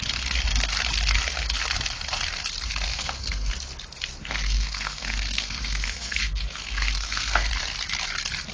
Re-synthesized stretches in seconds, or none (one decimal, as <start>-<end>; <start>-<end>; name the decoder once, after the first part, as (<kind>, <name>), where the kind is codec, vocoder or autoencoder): 2.9-3.5 (codec, SNAC); 4.2-7.5

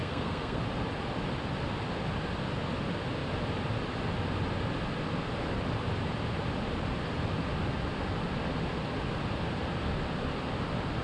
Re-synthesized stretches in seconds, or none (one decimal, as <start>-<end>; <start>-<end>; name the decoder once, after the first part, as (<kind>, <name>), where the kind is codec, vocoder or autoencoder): 0.0-0.6 (codec, SNAC)

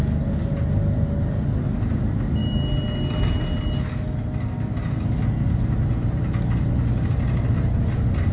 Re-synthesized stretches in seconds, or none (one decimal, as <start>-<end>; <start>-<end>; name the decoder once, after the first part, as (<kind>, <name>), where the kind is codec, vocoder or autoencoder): none

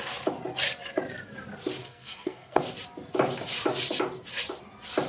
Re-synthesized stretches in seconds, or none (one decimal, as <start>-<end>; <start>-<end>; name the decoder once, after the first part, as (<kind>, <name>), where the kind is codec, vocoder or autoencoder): 1.8-2.6 (codec, SNAC)

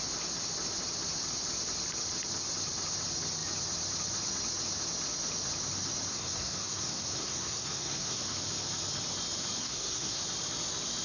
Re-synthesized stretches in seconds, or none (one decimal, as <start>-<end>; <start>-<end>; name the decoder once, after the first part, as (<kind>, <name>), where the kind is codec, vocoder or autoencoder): 6.1-8.2 (codec, SNAC); 9.6-10.2

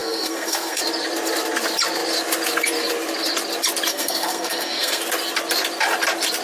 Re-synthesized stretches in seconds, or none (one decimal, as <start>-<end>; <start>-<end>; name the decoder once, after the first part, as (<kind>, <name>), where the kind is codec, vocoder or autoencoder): 0.0-0.8 (codec, SNAC); 3.9-5.0

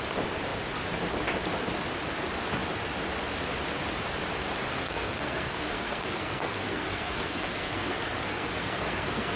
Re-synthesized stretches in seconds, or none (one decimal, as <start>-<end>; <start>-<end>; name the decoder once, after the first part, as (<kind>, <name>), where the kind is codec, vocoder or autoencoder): 4.7-9.4 (codec, SNAC)

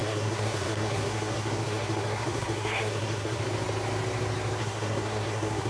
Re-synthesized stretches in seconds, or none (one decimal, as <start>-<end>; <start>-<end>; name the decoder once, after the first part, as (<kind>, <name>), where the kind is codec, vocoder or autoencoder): 0.0-3.4 (codec, SNAC); 4.6-5.7